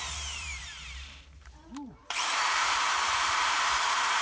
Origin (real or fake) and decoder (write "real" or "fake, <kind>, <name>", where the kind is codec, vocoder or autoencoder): fake, vocoder, BigVGAN v2